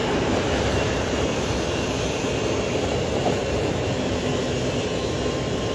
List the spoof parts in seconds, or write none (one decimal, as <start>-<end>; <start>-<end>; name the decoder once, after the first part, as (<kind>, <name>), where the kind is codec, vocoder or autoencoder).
0.0-2.2 (vocoder, BigVGAN v2); 3.4-4.4